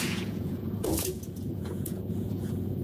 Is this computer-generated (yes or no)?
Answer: yes